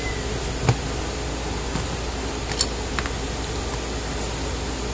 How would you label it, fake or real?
real